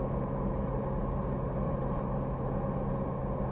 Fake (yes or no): no